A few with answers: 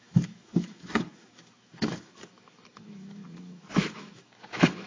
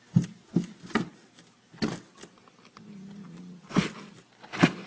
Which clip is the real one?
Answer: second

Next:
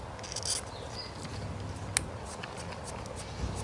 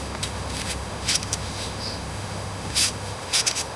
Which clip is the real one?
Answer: first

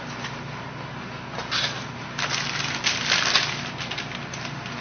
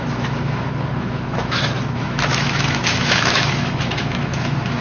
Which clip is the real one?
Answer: first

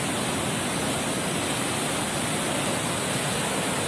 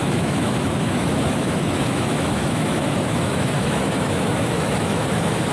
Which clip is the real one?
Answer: first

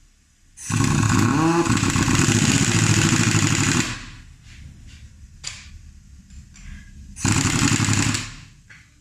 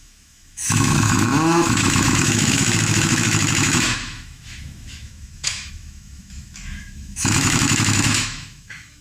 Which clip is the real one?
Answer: first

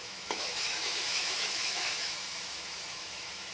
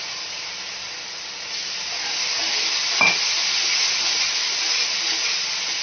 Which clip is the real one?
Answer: second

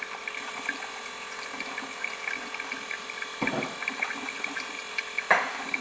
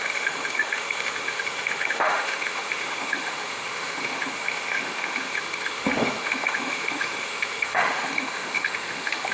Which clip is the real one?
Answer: first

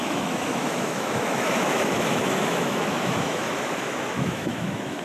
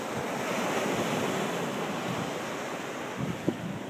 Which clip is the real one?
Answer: second